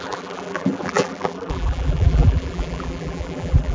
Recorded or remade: remade